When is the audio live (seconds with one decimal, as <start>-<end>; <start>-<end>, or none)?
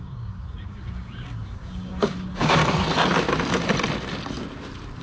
2.6-5.0